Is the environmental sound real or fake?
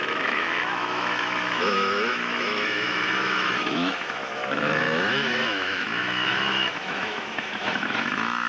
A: fake